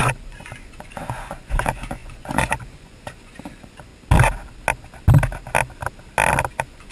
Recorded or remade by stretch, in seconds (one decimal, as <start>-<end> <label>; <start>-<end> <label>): 0.0-3.9 remade; 3.9-6.5 recorded; 6.5-6.9 remade